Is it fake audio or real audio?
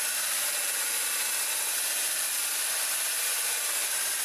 real